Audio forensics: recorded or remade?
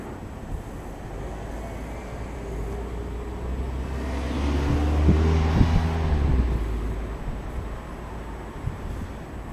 recorded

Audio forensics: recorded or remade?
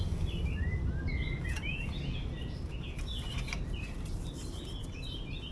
recorded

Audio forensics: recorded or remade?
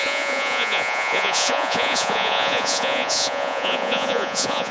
remade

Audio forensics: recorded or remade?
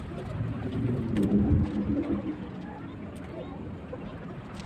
recorded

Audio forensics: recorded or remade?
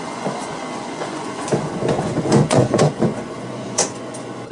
remade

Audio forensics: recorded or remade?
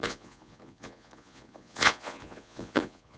remade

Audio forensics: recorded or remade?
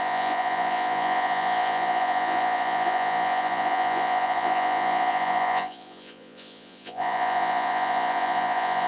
remade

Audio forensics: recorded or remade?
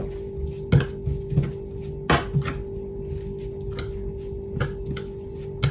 recorded